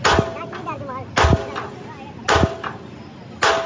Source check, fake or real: real